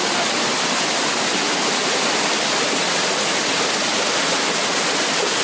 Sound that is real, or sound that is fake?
real